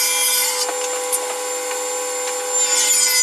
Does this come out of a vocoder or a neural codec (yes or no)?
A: no